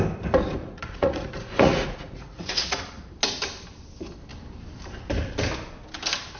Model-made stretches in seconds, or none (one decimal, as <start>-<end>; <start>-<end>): 0.6-2.8